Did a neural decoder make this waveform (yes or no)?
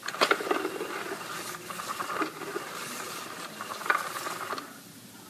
no